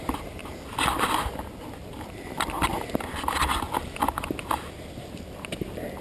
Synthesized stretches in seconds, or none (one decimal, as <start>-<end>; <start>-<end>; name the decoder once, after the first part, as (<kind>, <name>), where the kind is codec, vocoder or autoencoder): none

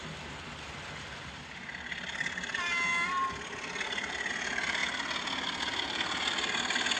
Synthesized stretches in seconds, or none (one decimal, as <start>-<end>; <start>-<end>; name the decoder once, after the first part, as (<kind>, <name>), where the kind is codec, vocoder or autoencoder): none

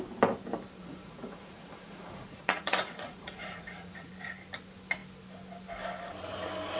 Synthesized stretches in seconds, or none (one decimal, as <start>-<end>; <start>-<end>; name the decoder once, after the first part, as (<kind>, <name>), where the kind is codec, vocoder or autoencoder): 0.8-4.1 (vocoder, Vocos)

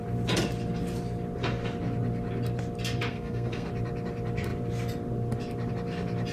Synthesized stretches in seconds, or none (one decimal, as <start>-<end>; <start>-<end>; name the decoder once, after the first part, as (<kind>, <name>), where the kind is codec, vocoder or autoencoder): 3.1-3.7 (codec, SNAC)

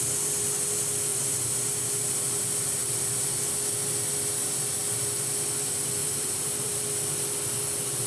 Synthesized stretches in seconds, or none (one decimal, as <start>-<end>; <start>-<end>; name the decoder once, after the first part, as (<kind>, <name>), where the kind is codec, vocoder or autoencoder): 1.1-2.1 (vocoder, BigVGAN v2); 6.0-6.8